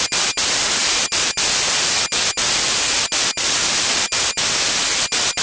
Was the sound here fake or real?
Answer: real